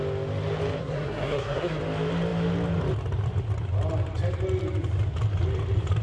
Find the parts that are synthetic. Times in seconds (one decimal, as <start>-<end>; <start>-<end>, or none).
0.8-1.8